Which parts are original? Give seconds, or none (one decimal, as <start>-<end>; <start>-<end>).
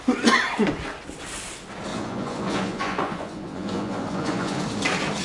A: 0.0-1.9; 4.6-5.2